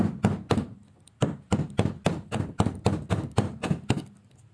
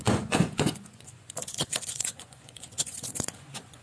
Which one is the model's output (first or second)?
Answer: second